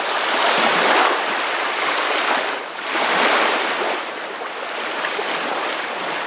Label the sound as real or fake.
real